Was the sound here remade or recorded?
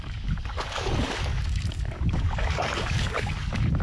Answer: remade